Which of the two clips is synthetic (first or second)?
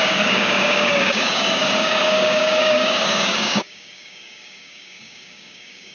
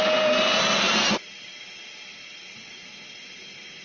first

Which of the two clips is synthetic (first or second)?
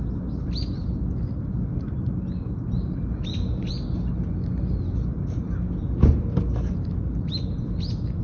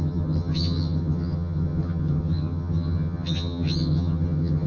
second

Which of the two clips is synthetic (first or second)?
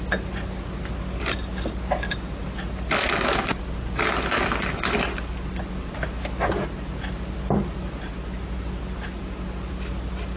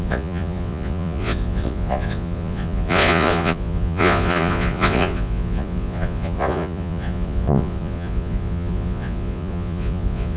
second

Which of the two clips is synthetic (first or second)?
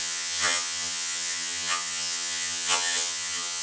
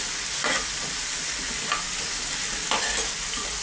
first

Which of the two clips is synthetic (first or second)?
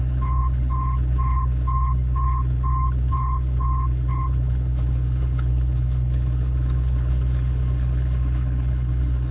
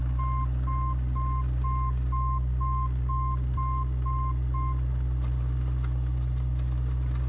first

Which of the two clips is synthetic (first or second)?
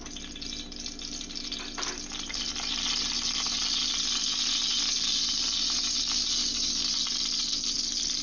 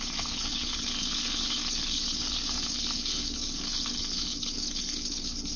second